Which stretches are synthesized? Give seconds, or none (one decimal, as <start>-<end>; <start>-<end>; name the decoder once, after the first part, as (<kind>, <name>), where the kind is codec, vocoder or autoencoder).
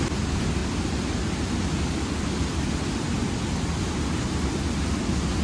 none